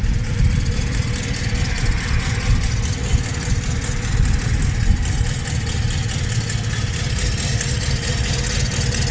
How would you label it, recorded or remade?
recorded